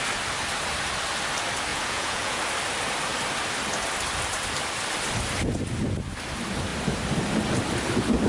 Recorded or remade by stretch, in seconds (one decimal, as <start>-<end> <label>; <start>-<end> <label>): 0.0-1.7 recorded; 1.7-2.4 remade; 2.4-8.3 recorded